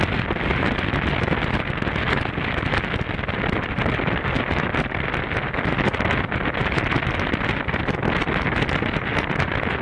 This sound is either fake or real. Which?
real